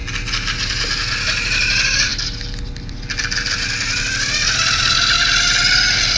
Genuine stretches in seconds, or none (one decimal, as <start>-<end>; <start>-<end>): 0.0-6.2